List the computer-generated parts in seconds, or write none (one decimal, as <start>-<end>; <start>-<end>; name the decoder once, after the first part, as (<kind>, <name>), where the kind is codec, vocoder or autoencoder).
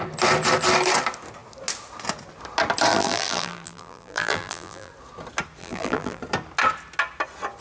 2.9-4.9 (vocoder, BigVGAN v2); 5.6-6.2